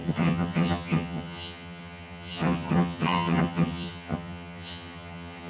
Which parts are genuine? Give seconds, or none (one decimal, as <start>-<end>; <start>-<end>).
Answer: none